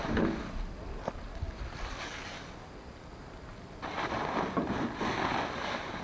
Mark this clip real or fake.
real